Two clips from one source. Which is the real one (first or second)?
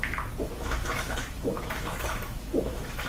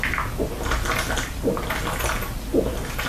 second